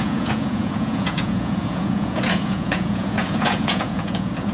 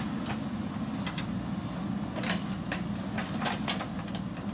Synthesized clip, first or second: first